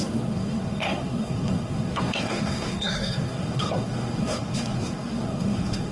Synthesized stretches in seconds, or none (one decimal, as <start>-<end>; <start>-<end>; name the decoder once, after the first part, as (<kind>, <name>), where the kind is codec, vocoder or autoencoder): 0.0-5.9 (codec, SNAC)